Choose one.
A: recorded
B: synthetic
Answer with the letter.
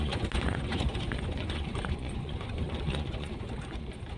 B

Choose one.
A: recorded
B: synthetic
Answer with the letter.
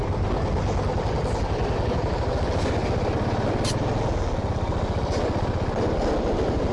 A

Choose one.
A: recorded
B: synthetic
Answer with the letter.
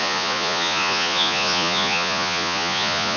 B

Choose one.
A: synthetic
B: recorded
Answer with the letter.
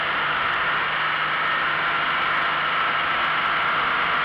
B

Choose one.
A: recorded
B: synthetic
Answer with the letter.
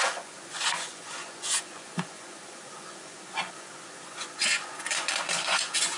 B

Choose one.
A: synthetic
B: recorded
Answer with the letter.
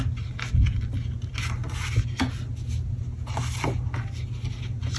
B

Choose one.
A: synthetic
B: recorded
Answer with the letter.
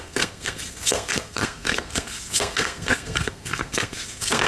A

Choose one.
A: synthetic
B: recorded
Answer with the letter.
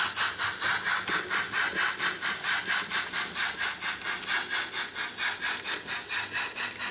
B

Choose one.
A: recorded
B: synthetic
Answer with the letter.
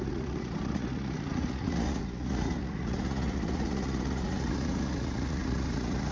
B